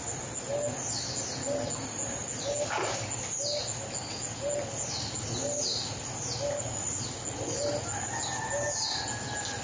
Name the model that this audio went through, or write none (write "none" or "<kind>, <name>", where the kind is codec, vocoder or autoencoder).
none